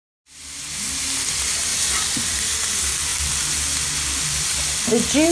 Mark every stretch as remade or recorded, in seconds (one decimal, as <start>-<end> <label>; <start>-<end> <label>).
0.0-5.3 recorded